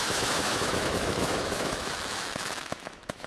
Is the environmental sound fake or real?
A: fake